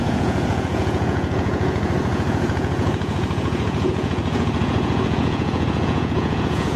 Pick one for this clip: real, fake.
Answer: fake